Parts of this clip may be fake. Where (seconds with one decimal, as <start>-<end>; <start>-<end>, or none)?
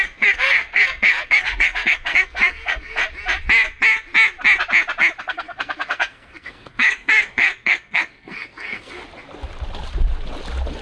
0.0-3.0; 5.2-9.0